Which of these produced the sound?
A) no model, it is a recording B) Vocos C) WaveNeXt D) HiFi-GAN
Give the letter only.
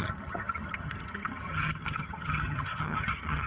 D